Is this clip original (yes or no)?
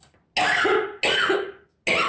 yes